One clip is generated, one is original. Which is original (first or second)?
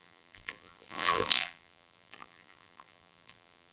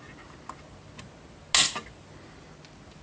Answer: second